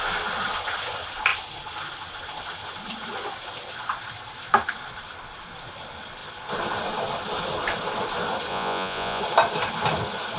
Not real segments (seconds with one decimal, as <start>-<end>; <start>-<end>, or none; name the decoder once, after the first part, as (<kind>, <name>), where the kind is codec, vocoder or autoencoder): 8.5-9.2 (vocoder, Vocos)